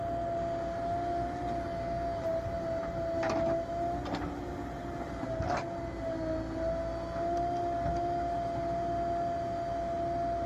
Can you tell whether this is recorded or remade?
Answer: recorded